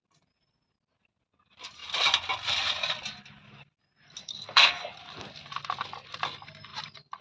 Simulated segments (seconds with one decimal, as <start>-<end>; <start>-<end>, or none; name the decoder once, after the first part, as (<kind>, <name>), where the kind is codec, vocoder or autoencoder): 4.2-4.9 (codec, SNAC)